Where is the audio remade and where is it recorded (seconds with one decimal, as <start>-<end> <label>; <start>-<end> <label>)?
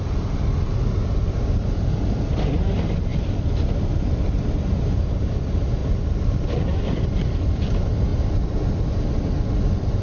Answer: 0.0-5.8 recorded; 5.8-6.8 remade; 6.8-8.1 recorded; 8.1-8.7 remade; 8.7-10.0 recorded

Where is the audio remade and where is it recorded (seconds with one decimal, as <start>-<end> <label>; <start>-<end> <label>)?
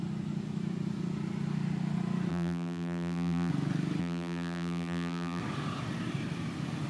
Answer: 0.0-2.3 recorded; 2.3-3.5 remade; 3.5-4.0 recorded; 4.0-5.4 remade; 5.4-6.9 recorded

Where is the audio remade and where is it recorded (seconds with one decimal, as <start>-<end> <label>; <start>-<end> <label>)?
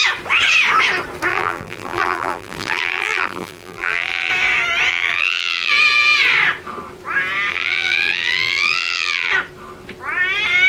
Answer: 0.0-1.3 recorded; 1.3-4.3 remade; 4.3-4.9 recorded; 4.9-5.7 remade; 5.7-7.5 recorded; 7.5-9.3 remade; 9.3-10.7 recorded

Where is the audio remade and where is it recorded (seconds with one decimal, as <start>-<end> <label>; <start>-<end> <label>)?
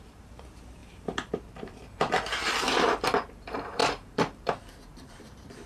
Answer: 0.0-5.7 remade